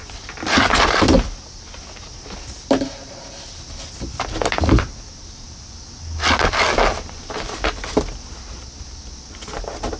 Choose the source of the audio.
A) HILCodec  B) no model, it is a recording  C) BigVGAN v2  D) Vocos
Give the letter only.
B